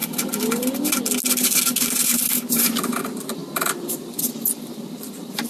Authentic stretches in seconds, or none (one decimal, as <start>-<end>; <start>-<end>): 0.0-2.5